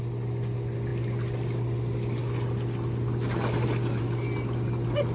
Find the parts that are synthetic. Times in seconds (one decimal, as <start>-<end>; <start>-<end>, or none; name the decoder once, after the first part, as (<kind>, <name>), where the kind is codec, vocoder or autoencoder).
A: none